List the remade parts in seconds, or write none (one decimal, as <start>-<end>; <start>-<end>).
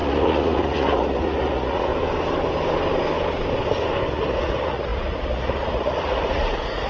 0.0-1.9; 4.1-6.9